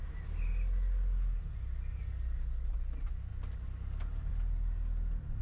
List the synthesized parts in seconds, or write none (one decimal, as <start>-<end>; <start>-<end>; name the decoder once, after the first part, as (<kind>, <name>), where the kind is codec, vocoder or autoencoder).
none